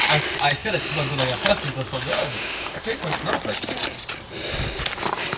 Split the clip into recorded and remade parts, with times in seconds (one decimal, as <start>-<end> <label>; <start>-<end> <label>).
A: 0.0-2.1 recorded; 2.1-3.0 remade; 3.0-5.4 recorded